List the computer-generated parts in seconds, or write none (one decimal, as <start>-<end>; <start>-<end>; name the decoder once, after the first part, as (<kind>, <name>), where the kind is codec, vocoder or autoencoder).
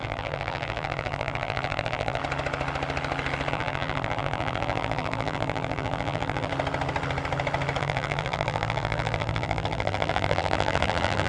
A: 0.0-2.2 (vocoder, BigVGAN v2); 3.5-6.5; 7.8-11.3